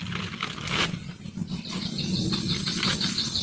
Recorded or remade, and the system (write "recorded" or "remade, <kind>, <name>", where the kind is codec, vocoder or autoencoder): recorded